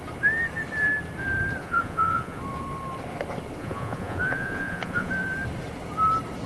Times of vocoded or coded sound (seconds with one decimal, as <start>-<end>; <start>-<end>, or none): 1.6-2.4; 3.6-5.1